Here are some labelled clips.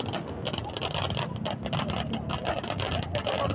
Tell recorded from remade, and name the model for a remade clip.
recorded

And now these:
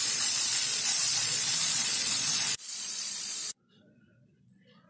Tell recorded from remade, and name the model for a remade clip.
remade, vocoder, Vocos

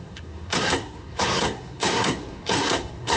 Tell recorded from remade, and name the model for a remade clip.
remade, codec, SNAC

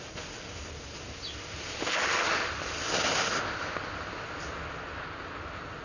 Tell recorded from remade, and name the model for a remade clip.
recorded